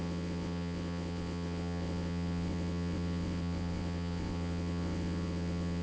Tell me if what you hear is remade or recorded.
remade